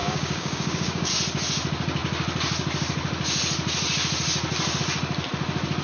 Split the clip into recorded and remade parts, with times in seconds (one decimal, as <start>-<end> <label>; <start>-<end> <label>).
0.0-1.1 remade; 1.1-5.8 recorded